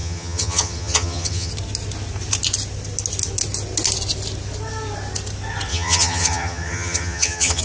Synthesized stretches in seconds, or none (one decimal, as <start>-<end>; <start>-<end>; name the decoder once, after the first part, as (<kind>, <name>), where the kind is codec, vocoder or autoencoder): 0.0-1.5 (vocoder, HiFi-GAN); 5.7-7.6